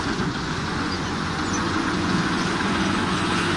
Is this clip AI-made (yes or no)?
yes